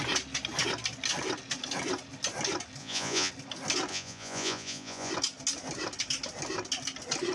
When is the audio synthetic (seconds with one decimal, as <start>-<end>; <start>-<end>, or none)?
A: 2.8-3.3; 3.9-5.1